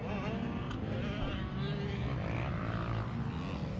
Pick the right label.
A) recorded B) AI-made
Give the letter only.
A